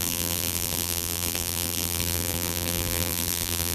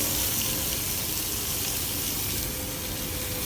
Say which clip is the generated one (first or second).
first